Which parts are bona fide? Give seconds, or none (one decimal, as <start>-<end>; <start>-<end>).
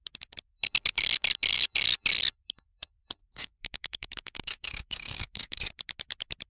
0.0-3.2; 5.6-6.5